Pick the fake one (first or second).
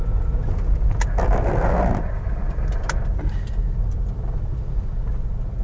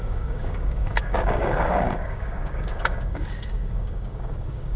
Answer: second